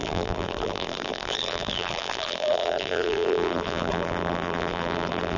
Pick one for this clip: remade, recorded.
remade